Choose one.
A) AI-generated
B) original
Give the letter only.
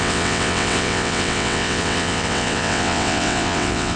A